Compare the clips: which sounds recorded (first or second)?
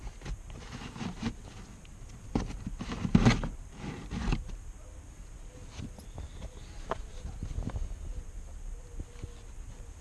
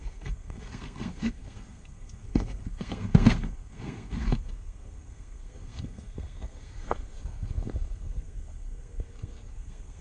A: first